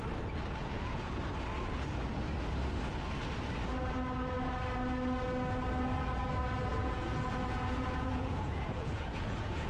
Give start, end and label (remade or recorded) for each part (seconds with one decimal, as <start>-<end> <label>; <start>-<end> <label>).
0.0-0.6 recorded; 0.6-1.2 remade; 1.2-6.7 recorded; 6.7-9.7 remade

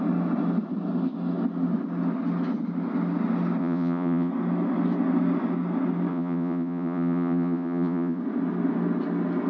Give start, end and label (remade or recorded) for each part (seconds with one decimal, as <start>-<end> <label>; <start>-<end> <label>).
0.0-3.6 recorded; 3.6-4.3 remade; 4.3-6.1 recorded; 6.1-8.2 remade; 8.2-9.5 recorded

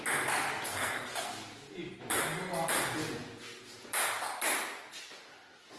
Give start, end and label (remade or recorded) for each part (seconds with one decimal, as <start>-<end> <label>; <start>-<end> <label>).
0.0-0.7 recorded; 0.7-1.3 remade; 1.3-5.8 recorded

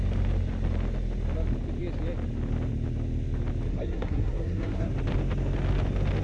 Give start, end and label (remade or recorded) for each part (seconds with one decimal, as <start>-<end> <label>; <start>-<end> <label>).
0.0-3.7 recorded; 3.7-4.9 remade; 4.9-6.2 recorded